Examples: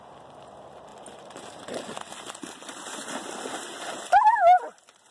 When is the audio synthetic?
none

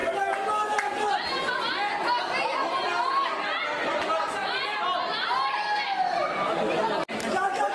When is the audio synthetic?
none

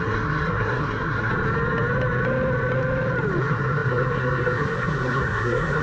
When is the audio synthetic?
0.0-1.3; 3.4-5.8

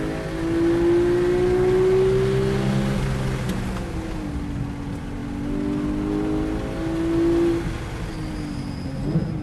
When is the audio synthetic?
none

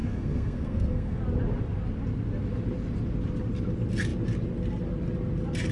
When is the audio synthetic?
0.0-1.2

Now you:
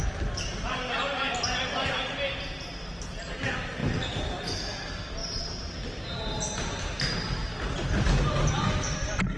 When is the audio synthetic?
none